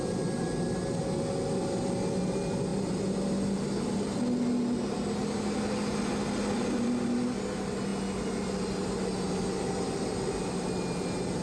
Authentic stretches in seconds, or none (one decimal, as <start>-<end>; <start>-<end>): 0.0-11.4